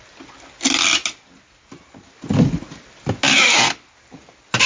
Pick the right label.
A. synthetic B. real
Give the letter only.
B